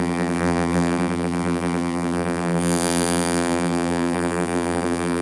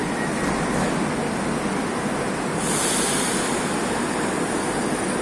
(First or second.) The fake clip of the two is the first